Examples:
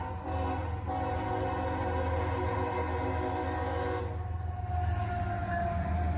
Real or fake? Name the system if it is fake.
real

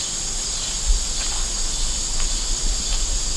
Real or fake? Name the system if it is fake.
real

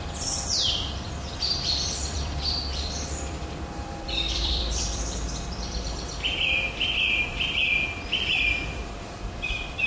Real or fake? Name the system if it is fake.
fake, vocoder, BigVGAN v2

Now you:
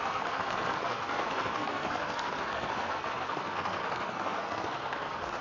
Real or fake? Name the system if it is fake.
fake, codec, SNAC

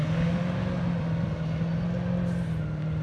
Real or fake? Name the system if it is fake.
real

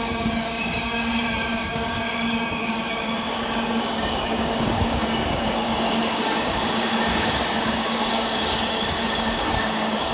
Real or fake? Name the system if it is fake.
fake, codec, DAC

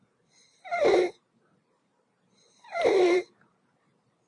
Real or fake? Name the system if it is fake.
fake, vocoder, BigVGAN v2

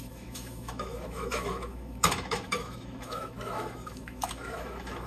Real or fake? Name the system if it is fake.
fake, autoencoder, DAC-VAE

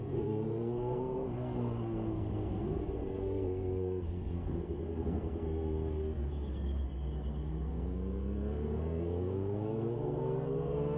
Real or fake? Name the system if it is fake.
fake, codec, SNAC